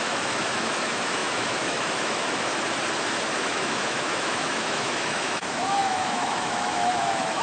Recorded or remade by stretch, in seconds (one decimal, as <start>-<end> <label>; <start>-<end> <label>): 0.0-2.5 remade; 2.5-3.4 recorded; 3.4-7.4 remade